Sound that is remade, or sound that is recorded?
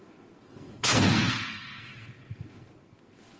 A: remade